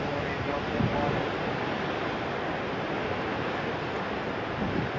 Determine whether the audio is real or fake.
real